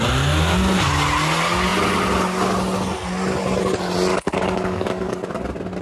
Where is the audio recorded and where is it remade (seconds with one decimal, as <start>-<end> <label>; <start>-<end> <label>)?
0.0-4.1 recorded; 4.1-5.3 remade; 5.3-5.8 recorded